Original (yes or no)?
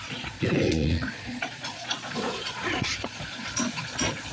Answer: no